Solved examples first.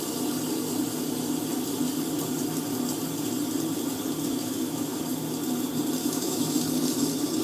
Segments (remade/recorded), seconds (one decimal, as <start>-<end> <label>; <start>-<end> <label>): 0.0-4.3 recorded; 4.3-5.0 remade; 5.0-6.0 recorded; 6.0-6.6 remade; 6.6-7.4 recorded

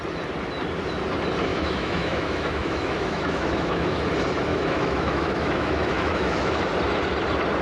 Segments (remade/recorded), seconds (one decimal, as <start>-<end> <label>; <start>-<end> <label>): 0.0-1.5 recorded; 1.5-4.0 remade; 4.0-4.5 recorded; 4.5-6.6 remade; 6.6-7.6 recorded

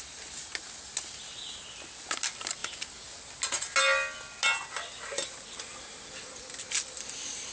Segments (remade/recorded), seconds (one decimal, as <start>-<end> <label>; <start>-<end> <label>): 0.0-7.5 recorded